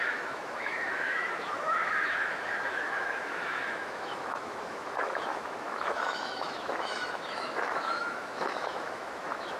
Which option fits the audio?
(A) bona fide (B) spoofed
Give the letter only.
B